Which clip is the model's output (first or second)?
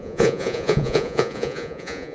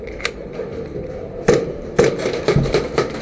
first